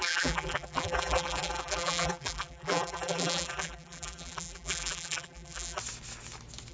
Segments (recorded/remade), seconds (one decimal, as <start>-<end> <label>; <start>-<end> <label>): 0.0-5.8 remade; 5.8-6.7 recorded